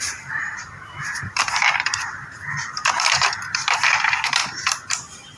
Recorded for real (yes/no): no